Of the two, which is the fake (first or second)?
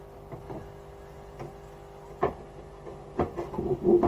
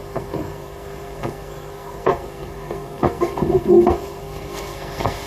second